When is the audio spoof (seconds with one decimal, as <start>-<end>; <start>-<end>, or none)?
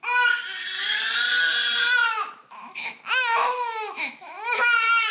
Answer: 2.0-5.1